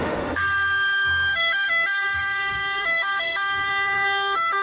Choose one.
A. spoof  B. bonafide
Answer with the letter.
A